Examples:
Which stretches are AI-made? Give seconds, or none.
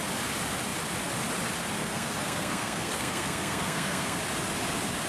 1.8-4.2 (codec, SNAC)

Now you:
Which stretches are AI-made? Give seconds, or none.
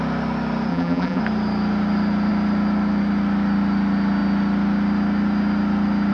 0.7-1.2 (vocoder, BigVGAN v2)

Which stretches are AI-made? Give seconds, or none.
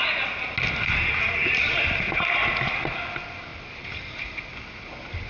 none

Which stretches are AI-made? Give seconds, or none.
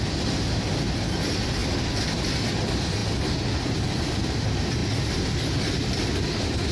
none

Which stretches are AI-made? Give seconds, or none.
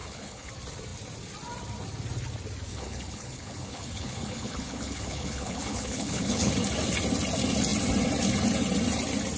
0.0-0.5 (codec, HILCodec); 2.7-6.5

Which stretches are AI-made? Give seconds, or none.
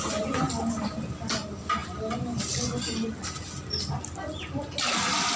1.8-3.9 (vocoder, BigVGAN v2)